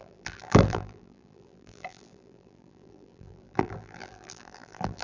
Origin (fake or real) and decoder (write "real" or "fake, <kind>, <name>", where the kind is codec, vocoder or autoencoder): fake, vocoder, BigVGAN v2